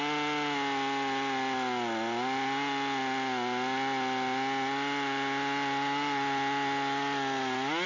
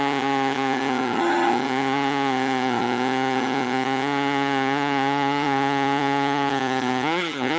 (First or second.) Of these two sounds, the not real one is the second